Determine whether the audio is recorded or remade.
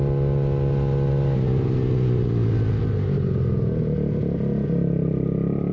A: recorded